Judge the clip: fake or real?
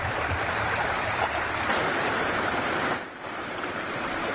fake